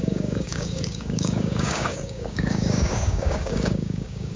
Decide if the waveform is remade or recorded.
remade